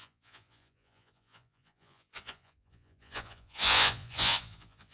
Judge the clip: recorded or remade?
remade